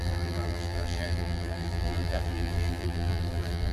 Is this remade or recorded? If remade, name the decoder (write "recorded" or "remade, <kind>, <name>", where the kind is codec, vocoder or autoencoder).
remade, vocoder, BigVGAN v2